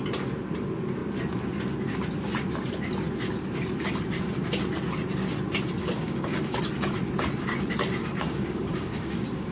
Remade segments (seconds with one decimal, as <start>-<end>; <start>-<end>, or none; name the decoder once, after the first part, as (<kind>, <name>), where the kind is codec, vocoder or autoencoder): 5.8-6.6 (codec, DAC); 8.0-9.5